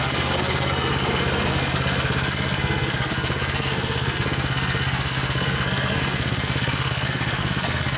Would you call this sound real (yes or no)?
no